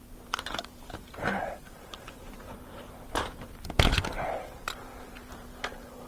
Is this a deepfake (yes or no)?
yes